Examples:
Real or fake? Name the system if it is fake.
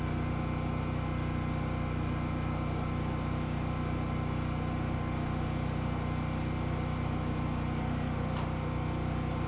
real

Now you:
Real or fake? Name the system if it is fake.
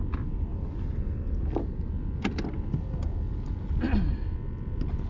real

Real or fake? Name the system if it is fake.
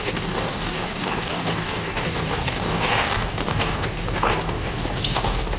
fake, codec, DAC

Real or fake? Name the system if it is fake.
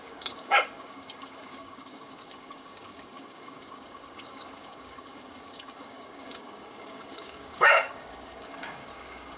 fake, codec, DAC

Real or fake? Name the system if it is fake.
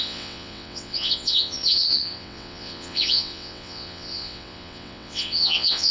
fake, vocoder, WaveNeXt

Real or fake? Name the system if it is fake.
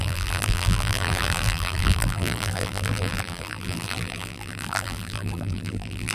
fake, vocoder, BigVGAN v2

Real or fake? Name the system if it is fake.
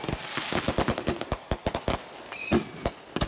real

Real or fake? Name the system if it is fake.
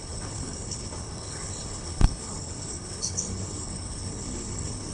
fake, codec, HILCodec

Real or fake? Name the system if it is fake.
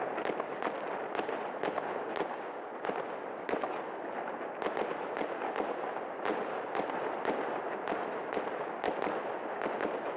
real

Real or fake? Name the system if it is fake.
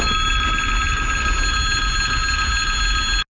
real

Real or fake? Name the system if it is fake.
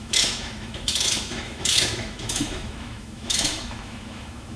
fake, autoencoder, DAC-VAE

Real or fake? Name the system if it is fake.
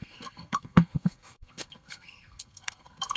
fake, codec, SNAC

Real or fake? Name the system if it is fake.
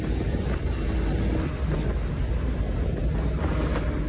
real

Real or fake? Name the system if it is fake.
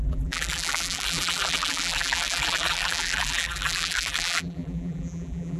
fake, vocoder, BigVGAN v2